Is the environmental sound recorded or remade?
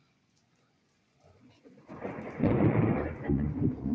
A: remade